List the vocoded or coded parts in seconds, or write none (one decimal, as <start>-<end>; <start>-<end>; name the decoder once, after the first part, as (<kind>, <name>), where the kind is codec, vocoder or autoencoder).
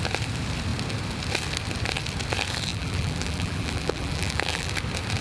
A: 2.7-4.7 (vocoder, BigVGAN v2)